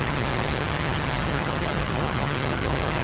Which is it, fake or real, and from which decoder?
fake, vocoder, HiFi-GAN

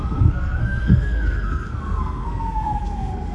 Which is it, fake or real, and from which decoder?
fake, codec, SNAC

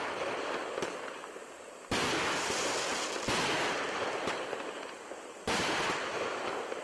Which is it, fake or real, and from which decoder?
real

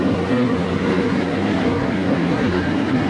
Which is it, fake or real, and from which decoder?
fake, codec, SNAC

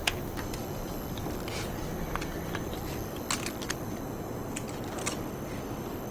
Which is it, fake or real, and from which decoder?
real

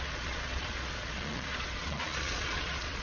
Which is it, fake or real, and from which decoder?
fake, vocoder, Vocos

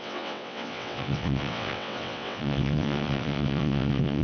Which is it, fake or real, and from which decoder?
fake, vocoder, WaveNeXt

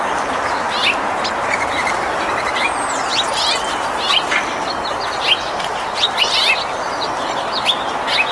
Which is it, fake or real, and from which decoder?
real